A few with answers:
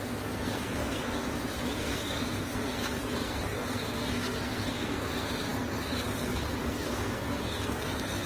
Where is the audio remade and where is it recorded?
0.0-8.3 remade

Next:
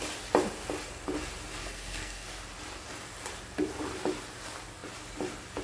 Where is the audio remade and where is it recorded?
0.0-1.6 recorded; 1.6-2.4 remade; 2.4-5.6 recorded